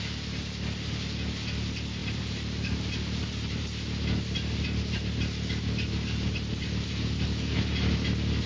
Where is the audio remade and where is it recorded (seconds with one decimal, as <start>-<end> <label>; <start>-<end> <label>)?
0.0-2.0 recorded; 2.0-6.6 remade; 6.6-8.5 recorded